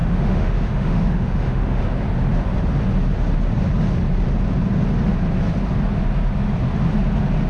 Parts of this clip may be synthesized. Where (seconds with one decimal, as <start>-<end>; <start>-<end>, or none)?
0.0-1.8